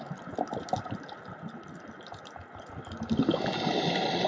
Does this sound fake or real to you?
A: real